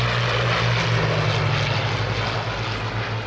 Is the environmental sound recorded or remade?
recorded